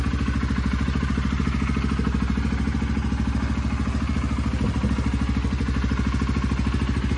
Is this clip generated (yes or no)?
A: no